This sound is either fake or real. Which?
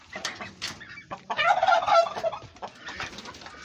real